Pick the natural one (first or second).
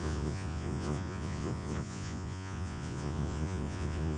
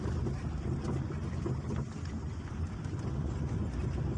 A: second